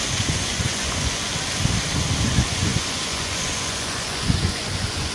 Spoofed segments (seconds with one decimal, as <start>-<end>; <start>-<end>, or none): 0.0-1.3; 2.3-5.1